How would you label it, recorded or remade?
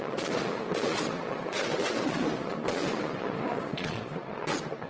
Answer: remade